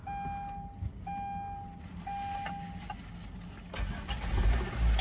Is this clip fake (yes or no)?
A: no